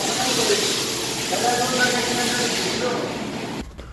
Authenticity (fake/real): real